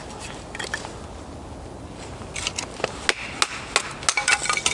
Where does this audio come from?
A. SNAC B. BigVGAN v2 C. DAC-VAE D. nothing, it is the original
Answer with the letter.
D